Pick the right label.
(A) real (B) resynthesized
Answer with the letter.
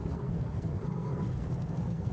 B